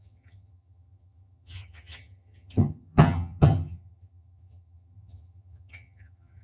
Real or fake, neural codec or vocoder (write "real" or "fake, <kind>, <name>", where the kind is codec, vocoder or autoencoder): fake, vocoder, HiFi-GAN